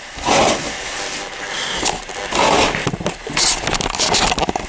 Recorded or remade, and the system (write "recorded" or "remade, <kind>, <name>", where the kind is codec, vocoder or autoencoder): recorded